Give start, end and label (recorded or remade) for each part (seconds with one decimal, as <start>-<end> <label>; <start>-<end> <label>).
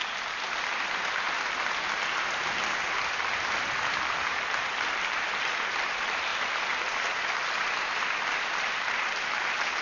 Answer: 0.0-9.8 recorded